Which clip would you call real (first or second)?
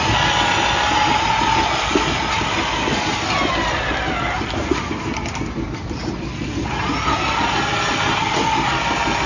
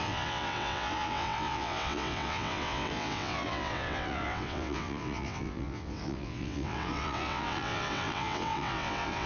first